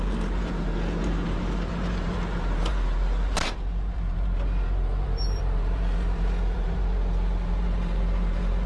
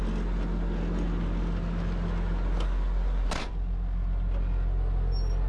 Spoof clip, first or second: first